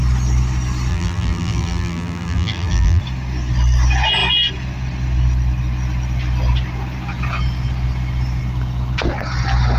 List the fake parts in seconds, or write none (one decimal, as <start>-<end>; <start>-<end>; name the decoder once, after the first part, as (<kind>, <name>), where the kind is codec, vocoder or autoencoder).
0.9-3.0 (vocoder, BigVGAN v2)